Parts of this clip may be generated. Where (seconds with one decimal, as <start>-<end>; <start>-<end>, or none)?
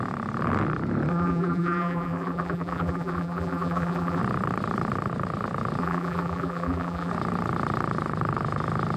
1.1-4.2; 5.8-7.1